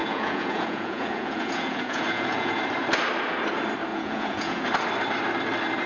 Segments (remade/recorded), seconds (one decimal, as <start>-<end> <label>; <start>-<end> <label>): 0.0-2.6 remade; 2.6-3.9 recorded; 3.9-4.7 remade; 4.7-5.9 recorded